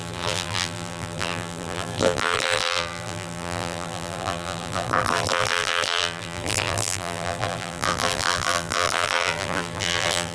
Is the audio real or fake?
fake